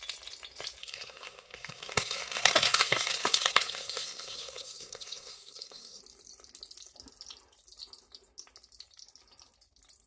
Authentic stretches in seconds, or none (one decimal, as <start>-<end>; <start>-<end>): 0.0-0.8; 6.0-10.1